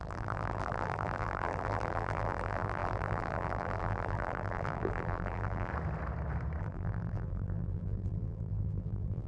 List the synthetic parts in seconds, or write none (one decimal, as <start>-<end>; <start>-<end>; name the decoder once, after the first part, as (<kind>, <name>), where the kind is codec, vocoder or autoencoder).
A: 0.0-5.7 (vocoder, BigVGAN v2); 6.6-9.3